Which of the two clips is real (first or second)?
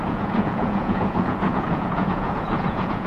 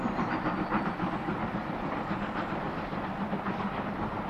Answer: second